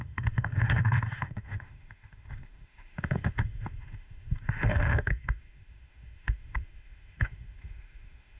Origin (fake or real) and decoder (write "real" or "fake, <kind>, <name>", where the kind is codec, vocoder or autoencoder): fake, autoencoder, DAC-VAE